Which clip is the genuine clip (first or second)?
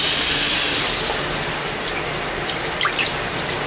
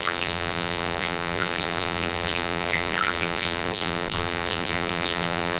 first